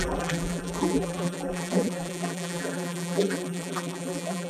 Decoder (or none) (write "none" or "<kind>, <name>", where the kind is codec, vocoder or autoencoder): vocoder, BigVGAN v2